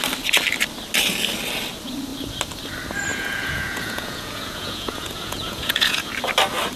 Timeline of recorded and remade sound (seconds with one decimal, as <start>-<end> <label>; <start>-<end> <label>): 0.0-3.1 recorded; 3.1-6.1 remade; 6.1-6.8 recorded